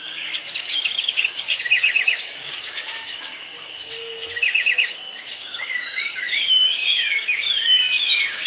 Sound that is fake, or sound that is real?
fake